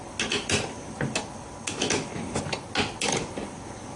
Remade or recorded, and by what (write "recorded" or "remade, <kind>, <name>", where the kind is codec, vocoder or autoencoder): recorded